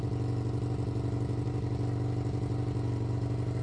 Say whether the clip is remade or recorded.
recorded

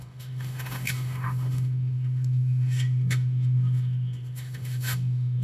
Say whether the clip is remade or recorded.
remade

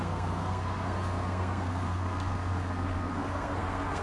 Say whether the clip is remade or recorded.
remade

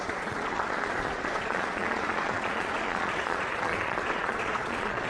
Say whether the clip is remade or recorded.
remade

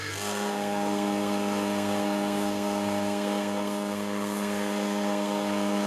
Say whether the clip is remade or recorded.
remade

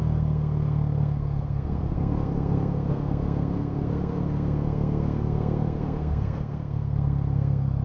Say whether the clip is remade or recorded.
remade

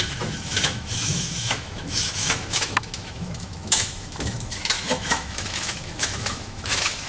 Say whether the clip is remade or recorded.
remade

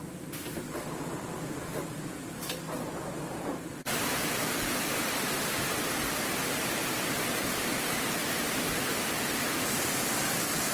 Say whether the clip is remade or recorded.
remade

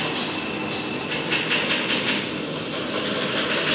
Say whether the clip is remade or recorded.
recorded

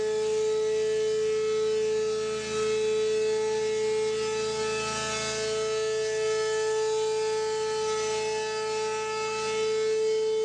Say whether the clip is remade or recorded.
recorded